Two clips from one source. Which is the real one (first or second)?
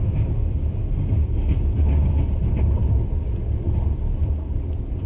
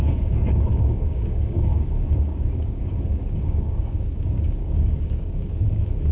first